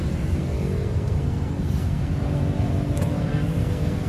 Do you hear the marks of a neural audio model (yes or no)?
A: yes